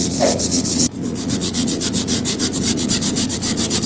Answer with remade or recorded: remade